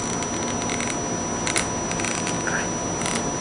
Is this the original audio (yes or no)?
yes